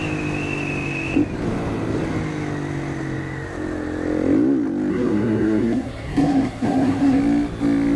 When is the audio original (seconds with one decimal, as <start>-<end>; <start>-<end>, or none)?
0.0-4.9; 7.2-8.0